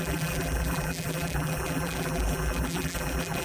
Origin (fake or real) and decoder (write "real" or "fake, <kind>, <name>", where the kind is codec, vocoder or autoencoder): fake, vocoder, BigVGAN v2